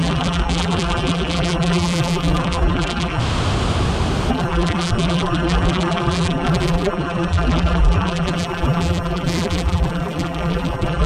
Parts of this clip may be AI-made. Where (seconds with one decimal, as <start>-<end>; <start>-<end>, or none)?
0.0-3.2; 4.3-11.1